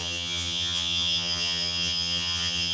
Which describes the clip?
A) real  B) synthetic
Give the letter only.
B